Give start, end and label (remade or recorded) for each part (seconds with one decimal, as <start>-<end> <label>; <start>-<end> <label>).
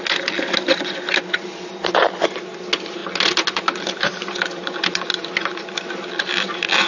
0.0-6.9 recorded